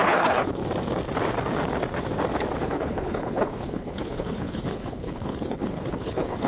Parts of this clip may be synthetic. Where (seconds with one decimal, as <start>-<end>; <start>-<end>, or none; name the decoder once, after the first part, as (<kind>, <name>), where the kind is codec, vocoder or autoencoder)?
0.0-0.6 (codec, HILCodec); 2.6-6.5